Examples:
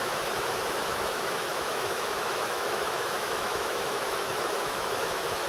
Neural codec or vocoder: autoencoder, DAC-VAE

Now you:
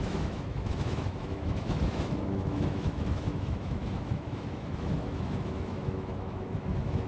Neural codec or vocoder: autoencoder, DAC-VAE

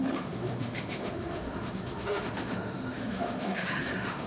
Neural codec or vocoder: autoencoder, DAC-VAE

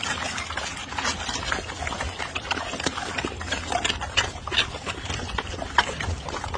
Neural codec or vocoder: none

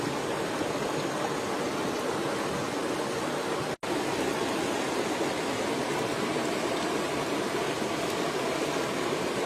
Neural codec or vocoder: none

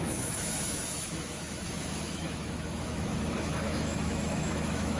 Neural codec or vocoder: autoencoder, DAC-VAE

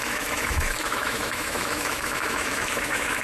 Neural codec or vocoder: autoencoder, DAC-VAE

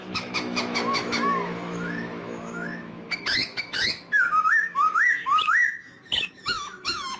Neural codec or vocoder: autoencoder, DAC-VAE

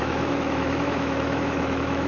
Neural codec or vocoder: autoencoder, DAC-VAE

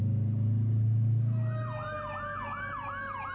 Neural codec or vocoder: none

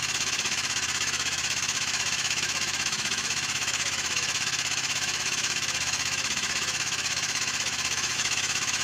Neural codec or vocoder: autoencoder, DAC-VAE